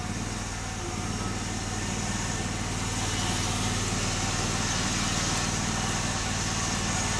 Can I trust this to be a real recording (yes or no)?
yes